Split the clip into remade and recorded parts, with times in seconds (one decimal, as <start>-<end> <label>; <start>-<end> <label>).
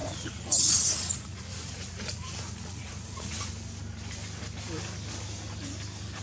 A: 0.0-3.5 remade; 3.5-6.2 recorded